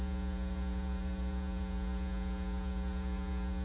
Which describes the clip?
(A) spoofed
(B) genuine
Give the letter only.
A